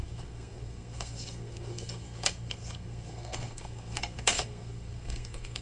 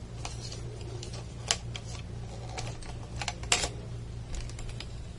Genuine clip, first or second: second